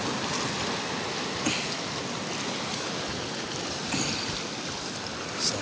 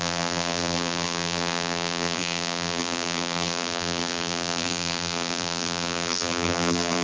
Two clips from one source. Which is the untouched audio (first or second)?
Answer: first